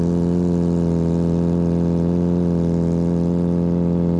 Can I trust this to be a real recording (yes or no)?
yes